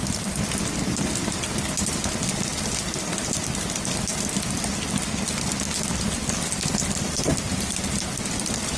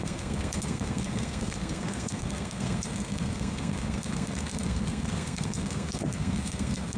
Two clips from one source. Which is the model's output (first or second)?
second